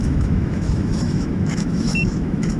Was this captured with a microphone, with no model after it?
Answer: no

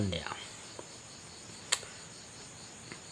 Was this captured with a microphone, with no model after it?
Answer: yes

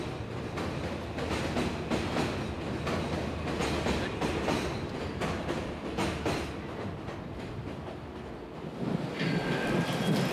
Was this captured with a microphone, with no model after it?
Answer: yes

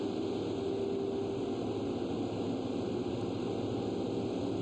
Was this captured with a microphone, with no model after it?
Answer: yes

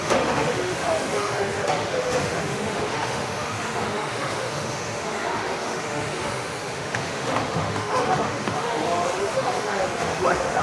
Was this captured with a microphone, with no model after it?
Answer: no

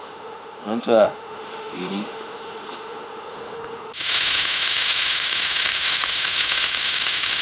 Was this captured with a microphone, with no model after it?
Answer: no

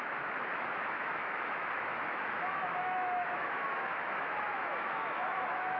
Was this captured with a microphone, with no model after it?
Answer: no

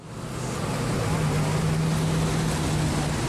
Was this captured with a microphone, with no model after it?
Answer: yes